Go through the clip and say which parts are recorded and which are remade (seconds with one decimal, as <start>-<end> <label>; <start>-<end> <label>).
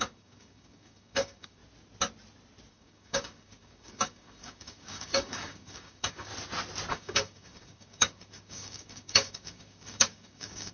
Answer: 0.0-1.6 remade; 1.6-2.7 recorded; 2.7-6.3 remade; 6.3-6.9 recorded; 6.9-10.7 remade